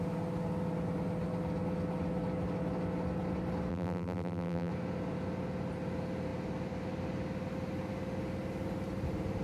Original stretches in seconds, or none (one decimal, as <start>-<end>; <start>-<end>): 0.0-3.7; 4.7-9.4